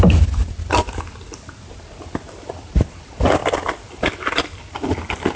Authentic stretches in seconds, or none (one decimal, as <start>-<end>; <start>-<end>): 0.0-5.4